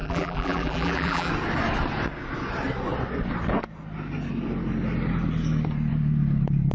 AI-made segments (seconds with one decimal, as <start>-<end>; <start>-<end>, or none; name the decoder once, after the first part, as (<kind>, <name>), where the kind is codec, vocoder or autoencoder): 0.0-1.3 (vocoder, BigVGAN v2)